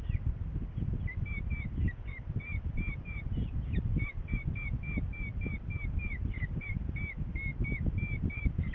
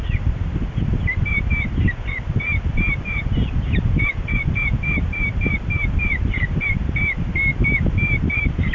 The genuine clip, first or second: first